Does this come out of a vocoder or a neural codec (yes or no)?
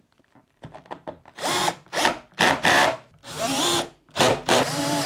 yes